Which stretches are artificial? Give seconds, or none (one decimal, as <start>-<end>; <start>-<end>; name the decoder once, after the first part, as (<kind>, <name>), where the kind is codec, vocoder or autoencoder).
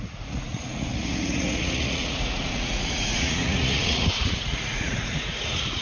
0.0-5.8 (vocoder, Vocos)